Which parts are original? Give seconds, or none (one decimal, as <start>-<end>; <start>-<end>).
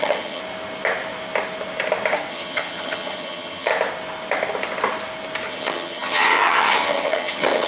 0.4-2.3; 3.7-5.5